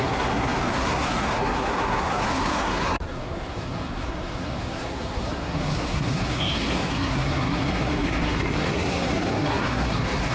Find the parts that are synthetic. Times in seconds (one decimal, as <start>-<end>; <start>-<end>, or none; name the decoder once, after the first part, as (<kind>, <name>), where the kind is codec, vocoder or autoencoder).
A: 0.0-10.3 (codec, SNAC)